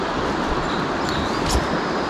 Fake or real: real